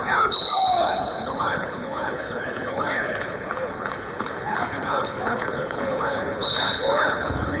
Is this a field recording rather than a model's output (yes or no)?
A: no